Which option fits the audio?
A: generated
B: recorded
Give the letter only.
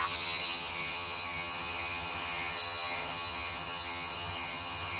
A